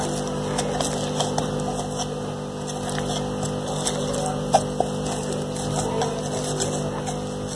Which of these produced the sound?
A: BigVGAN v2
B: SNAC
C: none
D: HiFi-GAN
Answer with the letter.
C